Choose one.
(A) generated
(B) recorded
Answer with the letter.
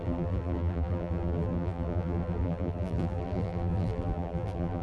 A